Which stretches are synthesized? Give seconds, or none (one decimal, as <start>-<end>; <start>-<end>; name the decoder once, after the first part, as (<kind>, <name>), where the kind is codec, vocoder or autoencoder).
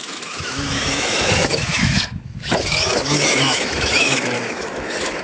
0.0-5.2 (autoencoder, DAC-VAE)